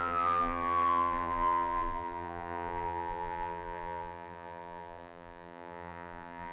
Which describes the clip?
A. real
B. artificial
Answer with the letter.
B